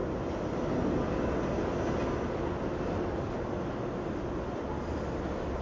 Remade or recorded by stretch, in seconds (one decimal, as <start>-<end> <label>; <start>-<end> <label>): 0.0-5.6 recorded